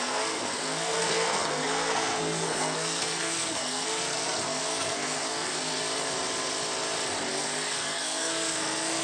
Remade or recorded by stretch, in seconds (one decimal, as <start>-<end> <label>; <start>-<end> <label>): 0.0-5.7 remade; 5.7-7.3 recorded; 7.3-9.0 remade